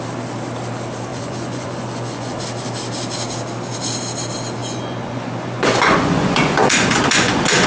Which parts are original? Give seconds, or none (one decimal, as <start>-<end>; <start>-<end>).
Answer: 0.0-1.1; 2.4-4.6